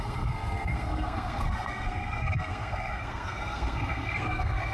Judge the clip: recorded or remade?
remade